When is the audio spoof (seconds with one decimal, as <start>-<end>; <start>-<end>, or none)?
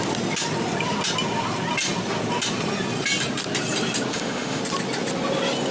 4.1-4.6